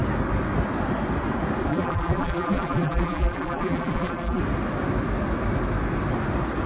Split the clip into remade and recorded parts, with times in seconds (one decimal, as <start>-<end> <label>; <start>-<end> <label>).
0.0-1.7 recorded; 1.7-4.4 remade; 4.4-6.7 recorded